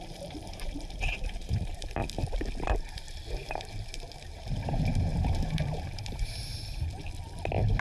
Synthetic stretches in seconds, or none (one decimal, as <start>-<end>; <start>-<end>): 0.0-2.0; 3.3-6.5